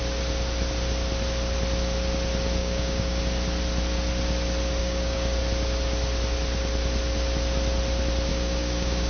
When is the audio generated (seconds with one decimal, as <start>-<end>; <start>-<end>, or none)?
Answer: 2.6-3.2; 4.8-5.4; 8.3-9.1